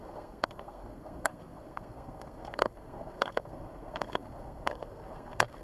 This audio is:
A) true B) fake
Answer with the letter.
B